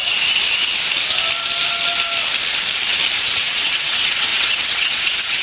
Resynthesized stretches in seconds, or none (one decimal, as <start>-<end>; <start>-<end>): 3.2-5.4